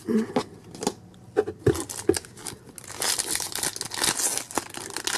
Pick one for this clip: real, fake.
real